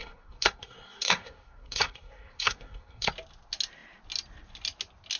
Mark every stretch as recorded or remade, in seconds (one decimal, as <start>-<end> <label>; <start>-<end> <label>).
0.0-3.1 remade; 3.1-5.2 recorded